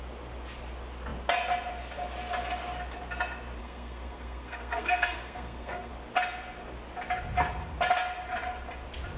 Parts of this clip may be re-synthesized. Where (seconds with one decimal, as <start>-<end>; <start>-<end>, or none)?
3.6-5.9